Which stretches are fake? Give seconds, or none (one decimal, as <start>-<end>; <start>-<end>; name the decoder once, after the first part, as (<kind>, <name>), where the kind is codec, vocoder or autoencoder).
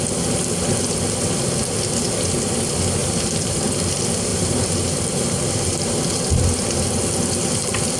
3.0-3.6 (vocoder, BigVGAN v2); 4.3-5.9